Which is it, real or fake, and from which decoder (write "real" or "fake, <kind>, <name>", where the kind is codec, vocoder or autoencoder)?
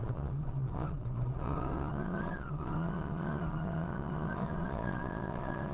fake, vocoder, Vocos